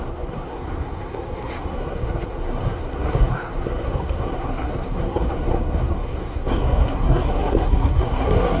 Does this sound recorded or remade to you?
remade